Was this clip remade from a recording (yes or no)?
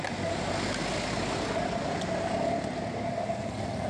no